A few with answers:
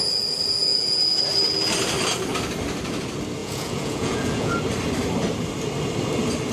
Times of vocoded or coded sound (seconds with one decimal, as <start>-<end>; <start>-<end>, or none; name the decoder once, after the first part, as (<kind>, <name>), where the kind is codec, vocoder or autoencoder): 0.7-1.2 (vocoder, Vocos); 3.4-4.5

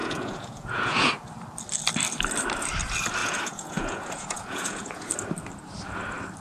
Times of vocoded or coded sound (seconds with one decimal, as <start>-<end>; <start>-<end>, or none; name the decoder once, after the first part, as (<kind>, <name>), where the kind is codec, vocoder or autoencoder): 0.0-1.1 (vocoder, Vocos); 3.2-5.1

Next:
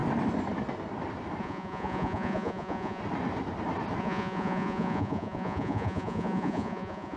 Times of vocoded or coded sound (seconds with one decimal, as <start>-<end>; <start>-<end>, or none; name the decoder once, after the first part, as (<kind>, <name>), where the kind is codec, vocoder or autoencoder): 1.4-3.0 (vocoder, Vocos); 4.0-7.2